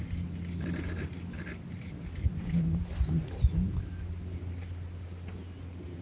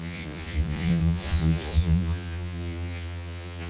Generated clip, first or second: second